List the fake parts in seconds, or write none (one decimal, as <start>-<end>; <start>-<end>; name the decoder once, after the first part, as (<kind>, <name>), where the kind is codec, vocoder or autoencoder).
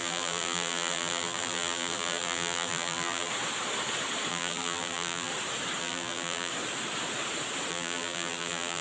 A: 0.0-3.3 (vocoder, BigVGAN v2); 4.3-5.3; 5.8-6.5; 7.7-8.8